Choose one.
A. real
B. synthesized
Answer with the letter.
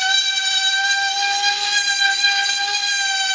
A